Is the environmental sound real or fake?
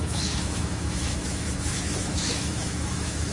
fake